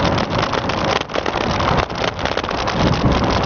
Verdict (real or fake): real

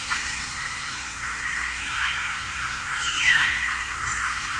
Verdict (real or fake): fake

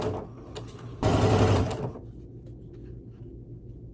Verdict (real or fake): real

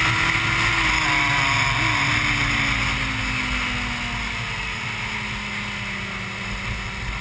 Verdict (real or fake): real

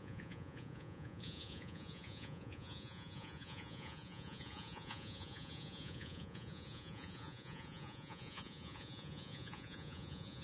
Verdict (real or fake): fake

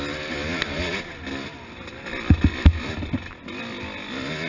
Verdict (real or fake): real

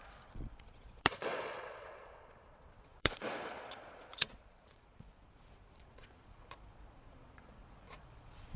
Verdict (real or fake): fake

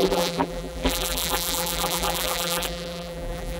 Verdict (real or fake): fake